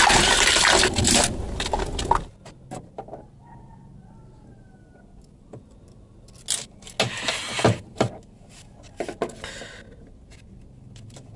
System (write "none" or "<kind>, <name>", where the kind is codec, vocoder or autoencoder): none